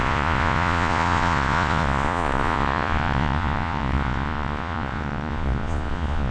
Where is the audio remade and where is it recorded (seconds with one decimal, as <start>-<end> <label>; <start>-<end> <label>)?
0.0-6.3 remade